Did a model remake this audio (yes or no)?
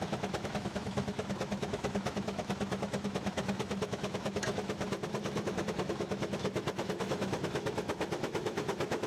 yes